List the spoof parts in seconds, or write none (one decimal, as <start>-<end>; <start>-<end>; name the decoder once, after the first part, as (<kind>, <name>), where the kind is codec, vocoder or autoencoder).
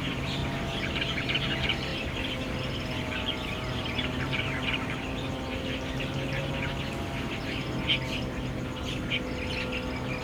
0.0-0.4 (vocoder, BigVGAN v2); 0.9-1.9; 2.7-6.7; 7.4-7.9